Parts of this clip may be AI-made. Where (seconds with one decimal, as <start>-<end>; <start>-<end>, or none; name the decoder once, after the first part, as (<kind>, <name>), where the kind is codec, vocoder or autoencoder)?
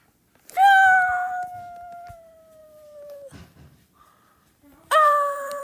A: 2.6-5.6 (vocoder, BigVGAN v2)